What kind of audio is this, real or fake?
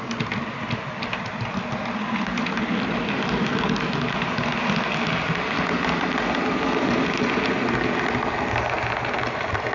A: real